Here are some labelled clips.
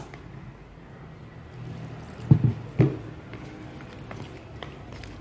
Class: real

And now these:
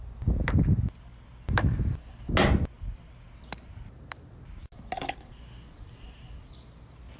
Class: real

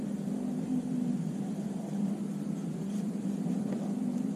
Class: fake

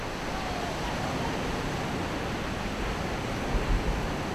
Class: real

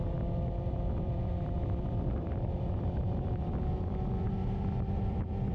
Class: fake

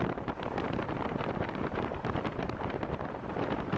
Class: fake